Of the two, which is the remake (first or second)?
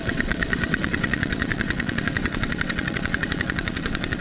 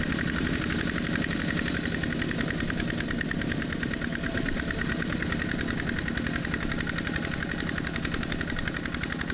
first